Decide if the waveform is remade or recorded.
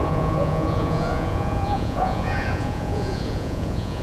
remade